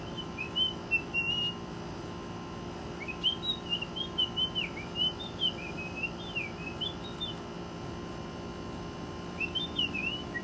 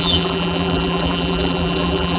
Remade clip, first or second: second